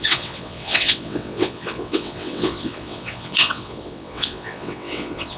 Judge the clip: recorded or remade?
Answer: remade